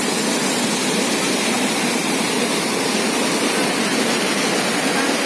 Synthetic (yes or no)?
no